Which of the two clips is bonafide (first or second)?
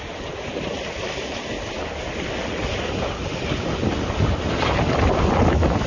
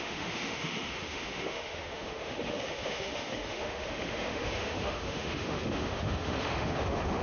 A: first